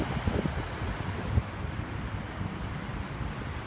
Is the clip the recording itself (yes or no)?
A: yes